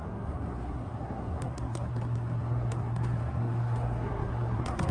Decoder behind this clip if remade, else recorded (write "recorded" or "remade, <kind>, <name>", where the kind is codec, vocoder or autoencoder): remade, codec, SNAC